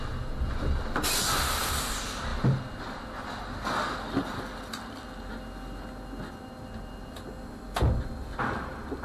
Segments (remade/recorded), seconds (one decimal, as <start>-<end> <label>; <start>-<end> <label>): 0.0-9.0 recorded